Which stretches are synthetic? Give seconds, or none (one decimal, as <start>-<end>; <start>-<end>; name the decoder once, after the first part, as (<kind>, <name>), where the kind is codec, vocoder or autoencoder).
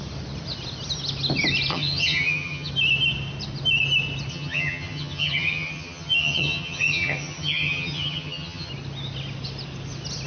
1.7-2.7 (vocoder, HiFi-GAN); 4.3-8.7